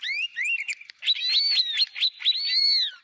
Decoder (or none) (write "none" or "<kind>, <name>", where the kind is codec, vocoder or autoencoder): none